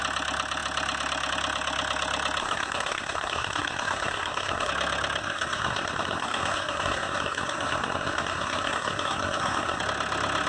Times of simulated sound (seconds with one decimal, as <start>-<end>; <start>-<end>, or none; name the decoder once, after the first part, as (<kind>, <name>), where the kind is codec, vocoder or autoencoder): 2.4-4.7 (codec, SNAC); 5.2-9.8